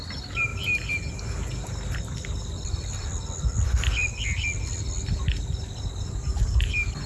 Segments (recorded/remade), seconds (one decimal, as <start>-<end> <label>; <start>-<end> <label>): 0.0-7.1 recorded